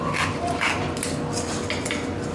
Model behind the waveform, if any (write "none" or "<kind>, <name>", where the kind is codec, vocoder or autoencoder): none